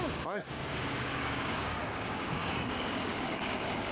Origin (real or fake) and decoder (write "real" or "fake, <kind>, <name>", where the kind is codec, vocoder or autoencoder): fake, codec, DAC